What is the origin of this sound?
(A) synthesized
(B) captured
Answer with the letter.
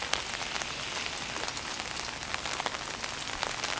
B